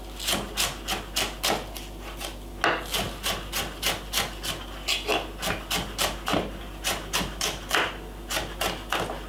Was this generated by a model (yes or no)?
no